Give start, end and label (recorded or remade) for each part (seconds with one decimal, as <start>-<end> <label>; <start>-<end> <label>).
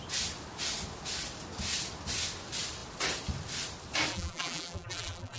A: 0.0-4.1 recorded; 4.1-5.4 remade